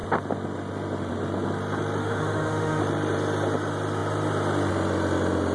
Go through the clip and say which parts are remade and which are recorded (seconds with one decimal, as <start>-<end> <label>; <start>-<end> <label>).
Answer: 0.0-2.0 recorded; 2.0-2.8 remade; 2.8-5.5 recorded